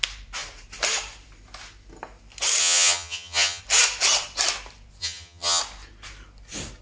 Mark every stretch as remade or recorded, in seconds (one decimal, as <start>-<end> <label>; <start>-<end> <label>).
0.0-2.6 recorded; 2.6-3.6 remade; 3.6-5.0 recorded; 5.0-5.6 remade; 5.6-6.8 recorded

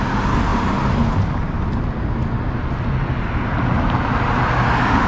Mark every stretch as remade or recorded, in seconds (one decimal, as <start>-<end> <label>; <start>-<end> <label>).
0.0-0.5 recorded; 0.5-1.1 remade; 1.1-5.1 recorded

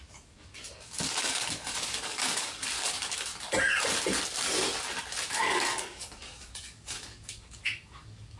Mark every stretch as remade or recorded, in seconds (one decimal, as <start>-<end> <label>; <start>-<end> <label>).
0.0-3.3 remade; 3.3-5.4 recorded; 5.4-8.4 remade

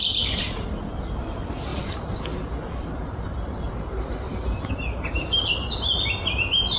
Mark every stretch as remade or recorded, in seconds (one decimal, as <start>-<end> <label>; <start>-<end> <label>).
0.0-6.8 recorded

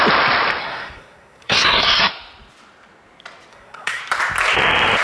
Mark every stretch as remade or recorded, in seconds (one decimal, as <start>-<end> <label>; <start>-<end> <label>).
0.0-0.6 recorded; 0.6-2.1 remade; 2.1-3.5 recorded; 3.5-4.0 remade; 4.0-5.0 recorded

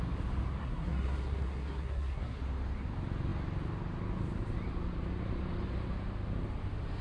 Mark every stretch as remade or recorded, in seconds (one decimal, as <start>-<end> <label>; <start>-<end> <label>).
0.0-0.6 recorded; 0.6-2.4 remade; 2.4-7.0 recorded